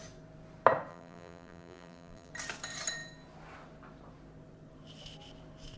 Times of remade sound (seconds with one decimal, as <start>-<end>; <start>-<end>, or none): 0.9-2.3